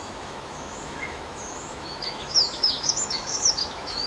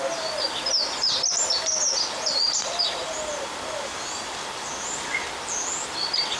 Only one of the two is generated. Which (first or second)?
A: first